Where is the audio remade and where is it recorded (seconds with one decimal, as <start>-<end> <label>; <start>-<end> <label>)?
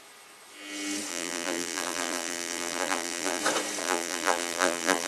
0.0-1.1 recorded; 1.1-3.4 remade; 3.4-3.8 recorded; 3.8-5.1 remade